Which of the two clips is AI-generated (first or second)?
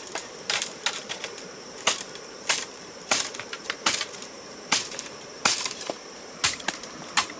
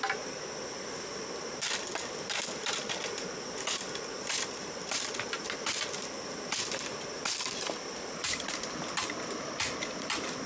first